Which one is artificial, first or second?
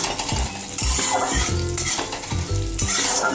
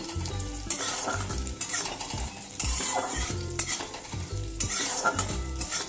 second